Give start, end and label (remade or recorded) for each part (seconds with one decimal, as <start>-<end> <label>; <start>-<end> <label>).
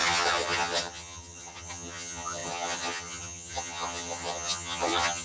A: 0.0-5.2 remade